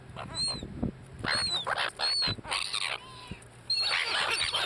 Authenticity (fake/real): real